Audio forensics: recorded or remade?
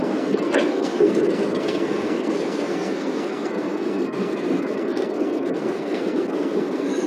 remade